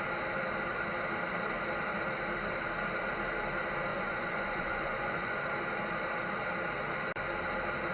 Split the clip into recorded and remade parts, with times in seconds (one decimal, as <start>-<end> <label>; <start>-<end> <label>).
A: 0.0-3.9 recorded; 3.9-5.4 remade; 5.4-7.9 recorded